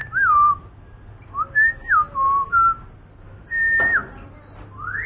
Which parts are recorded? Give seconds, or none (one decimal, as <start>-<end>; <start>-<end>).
0.0-5.1